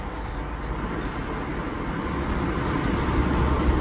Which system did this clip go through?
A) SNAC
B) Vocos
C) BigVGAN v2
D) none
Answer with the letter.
D